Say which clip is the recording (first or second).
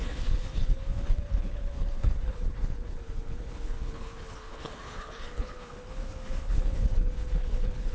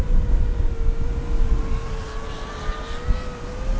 second